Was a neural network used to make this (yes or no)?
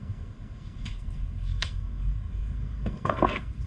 yes